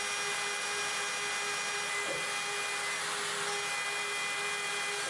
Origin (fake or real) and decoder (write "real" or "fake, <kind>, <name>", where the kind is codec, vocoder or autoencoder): real